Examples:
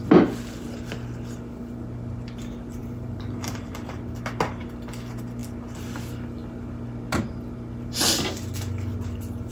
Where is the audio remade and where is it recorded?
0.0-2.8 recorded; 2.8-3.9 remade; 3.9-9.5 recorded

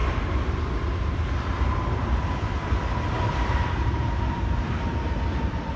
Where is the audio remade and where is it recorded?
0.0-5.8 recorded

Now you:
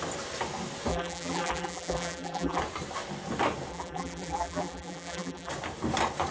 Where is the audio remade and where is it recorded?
0.0-0.9 recorded; 0.9-2.6 remade; 2.6-3.7 recorded; 3.7-5.5 remade; 5.5-6.3 recorded